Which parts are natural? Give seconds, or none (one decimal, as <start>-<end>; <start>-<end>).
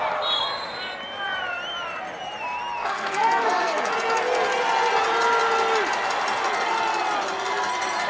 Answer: 0.0-2.8; 3.9-8.1